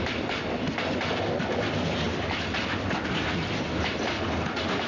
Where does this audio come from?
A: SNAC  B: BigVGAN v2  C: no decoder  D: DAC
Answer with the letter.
C